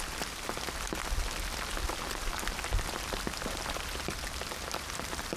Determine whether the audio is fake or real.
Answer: real